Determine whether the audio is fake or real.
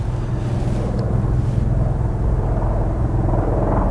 real